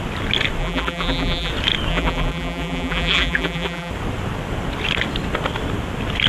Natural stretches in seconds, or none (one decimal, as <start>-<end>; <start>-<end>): 0.0-0.6; 1.5-1.9; 3.9-6.3